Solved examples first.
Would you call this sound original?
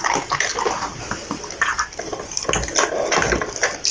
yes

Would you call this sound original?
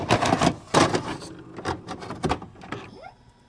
yes